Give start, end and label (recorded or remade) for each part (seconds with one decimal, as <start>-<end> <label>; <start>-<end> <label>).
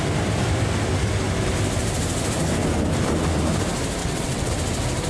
0.0-4.0 recorded; 4.0-4.5 remade; 4.5-5.1 recorded